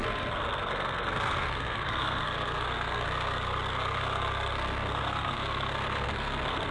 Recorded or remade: remade